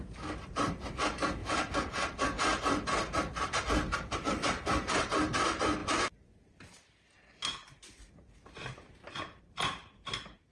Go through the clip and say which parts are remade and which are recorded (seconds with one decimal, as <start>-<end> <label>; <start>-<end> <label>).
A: 0.0-1.4 recorded; 1.4-5.0 remade; 5.0-10.5 recorded